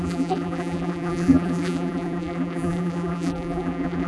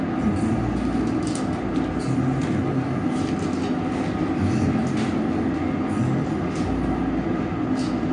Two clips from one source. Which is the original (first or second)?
second